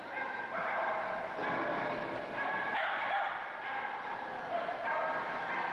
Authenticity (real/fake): real